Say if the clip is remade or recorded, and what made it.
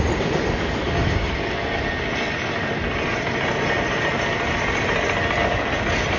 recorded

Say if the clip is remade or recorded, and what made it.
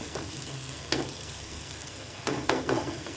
remade, codec, SNAC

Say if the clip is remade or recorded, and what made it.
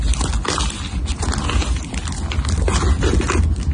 recorded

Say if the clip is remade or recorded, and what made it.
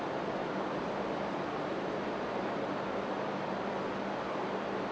remade, vocoder, BigVGAN v2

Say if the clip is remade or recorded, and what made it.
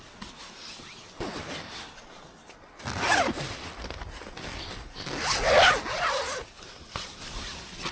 recorded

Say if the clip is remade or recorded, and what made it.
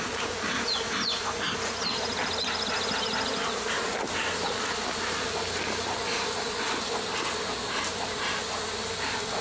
recorded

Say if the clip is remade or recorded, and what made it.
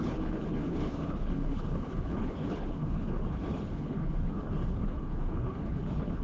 remade, codec, HILCodec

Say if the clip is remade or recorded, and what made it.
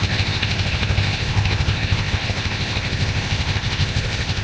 remade, codec, ZipCodec